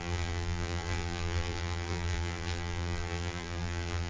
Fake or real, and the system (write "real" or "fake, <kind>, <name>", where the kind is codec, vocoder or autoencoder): fake, vocoder, BigVGAN v2